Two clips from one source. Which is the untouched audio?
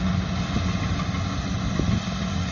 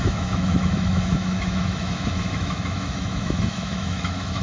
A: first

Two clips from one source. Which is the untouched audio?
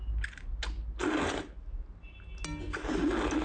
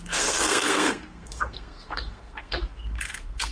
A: first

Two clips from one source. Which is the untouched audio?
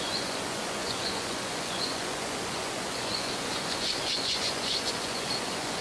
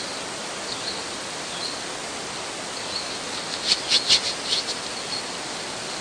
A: second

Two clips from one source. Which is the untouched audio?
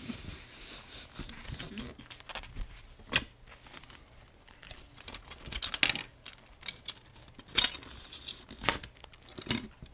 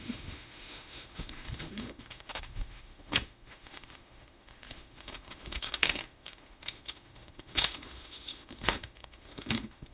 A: first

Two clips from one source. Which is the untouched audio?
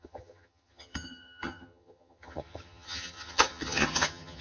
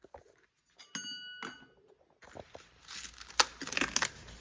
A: second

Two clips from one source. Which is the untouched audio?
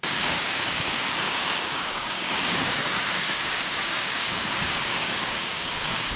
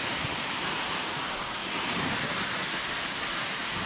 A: second